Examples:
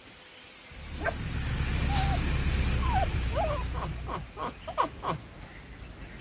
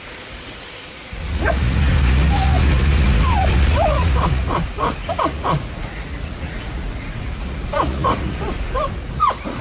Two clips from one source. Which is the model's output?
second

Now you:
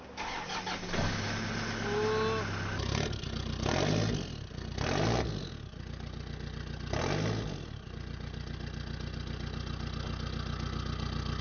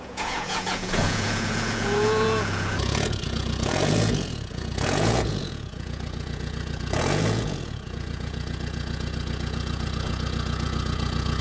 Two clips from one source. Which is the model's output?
second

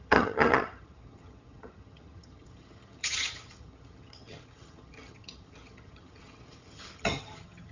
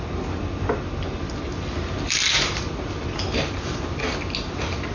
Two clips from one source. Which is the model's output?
first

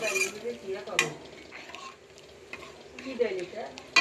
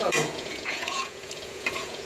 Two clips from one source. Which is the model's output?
second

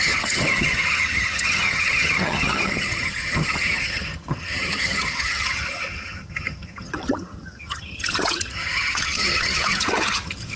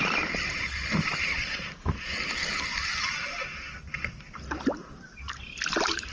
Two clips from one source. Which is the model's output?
first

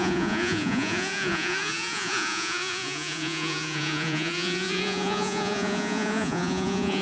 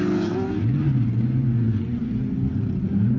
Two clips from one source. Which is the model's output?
first